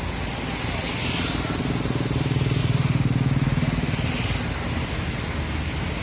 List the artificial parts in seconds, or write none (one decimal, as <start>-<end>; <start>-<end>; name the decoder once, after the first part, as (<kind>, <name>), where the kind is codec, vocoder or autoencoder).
none